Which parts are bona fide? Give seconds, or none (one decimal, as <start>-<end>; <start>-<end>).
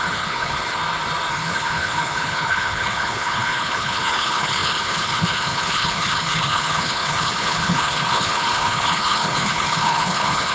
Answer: 0.8-1.3